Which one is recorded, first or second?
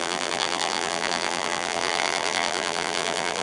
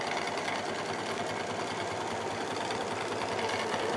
second